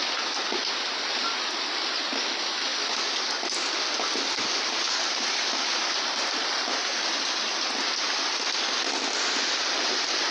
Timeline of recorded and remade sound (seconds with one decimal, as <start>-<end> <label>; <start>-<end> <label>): 0.0-10.3 recorded